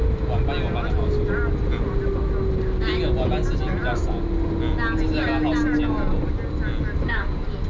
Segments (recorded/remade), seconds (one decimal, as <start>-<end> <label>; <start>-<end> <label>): 0.0-7.7 recorded